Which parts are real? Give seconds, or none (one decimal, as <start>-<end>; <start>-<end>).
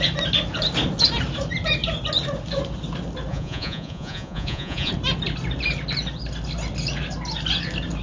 0.0-3.3; 4.9-8.0